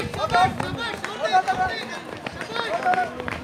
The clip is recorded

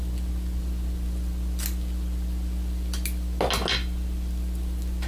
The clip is recorded